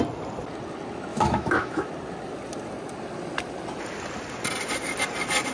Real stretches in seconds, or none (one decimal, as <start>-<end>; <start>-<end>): 0.0-1.1; 1.9-5.5